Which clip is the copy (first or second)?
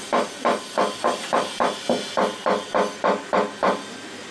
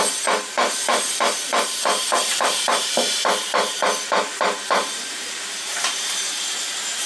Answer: second